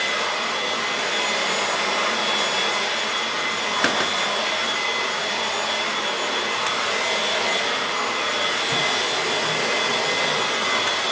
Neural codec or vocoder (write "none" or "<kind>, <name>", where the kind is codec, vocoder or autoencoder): none